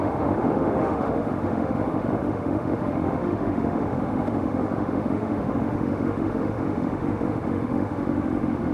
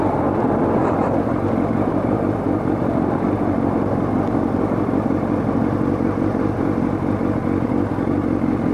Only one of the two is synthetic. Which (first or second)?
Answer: first